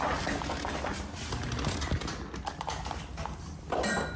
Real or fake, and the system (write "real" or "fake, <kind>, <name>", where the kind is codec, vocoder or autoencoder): real